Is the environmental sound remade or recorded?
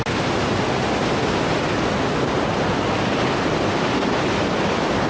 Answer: recorded